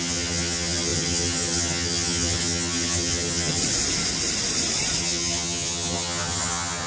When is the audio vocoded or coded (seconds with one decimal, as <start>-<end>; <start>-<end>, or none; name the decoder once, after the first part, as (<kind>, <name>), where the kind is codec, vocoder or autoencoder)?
0.0-3.6 (vocoder, HiFi-GAN); 5.0-6.9